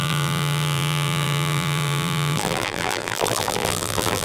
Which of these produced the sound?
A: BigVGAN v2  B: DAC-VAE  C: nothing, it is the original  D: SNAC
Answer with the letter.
A